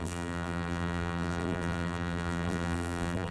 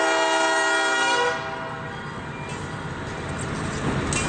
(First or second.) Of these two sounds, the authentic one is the second